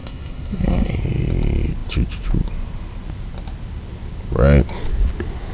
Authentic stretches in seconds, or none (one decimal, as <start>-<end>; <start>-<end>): 1.0-5.5